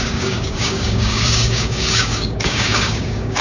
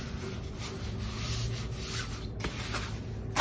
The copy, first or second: first